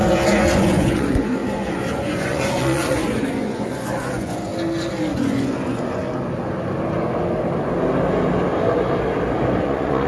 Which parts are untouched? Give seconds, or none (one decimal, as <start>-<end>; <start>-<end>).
4.5-5.1; 6.0-9.6

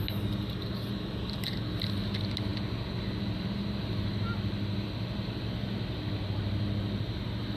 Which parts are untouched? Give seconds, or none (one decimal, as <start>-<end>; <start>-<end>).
0.0-7.6

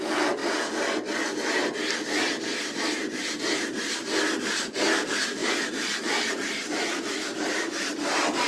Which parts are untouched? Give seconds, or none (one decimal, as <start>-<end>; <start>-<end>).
0.0-5.4; 7.9-8.5

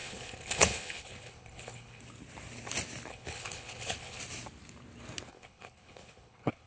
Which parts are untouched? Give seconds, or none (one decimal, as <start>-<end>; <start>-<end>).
2.0-3.1; 4.2-5.3

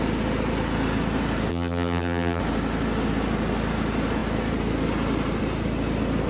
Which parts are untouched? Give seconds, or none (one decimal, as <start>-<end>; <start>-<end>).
0.0-1.5; 2.4-6.3

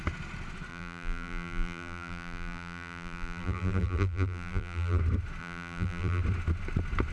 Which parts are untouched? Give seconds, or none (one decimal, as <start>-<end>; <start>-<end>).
0.0-0.7; 5.0-5.4; 6.2-7.1

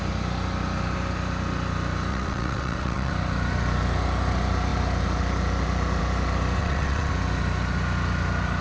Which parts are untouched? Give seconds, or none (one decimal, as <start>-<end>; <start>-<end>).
0.0-2.1; 3.1-6.6; 7.1-8.6

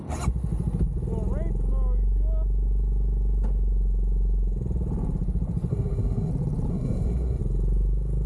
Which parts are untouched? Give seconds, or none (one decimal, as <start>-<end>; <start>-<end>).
0.0-5.7; 6.3-6.7; 7.4-8.3